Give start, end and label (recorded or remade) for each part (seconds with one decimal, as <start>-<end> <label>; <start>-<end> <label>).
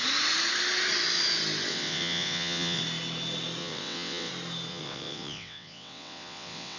0.0-1.7 recorded; 1.7-2.8 remade; 2.8-3.6 recorded; 3.6-4.3 remade; 4.3-4.7 recorded; 4.7-6.8 remade